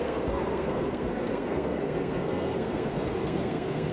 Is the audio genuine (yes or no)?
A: no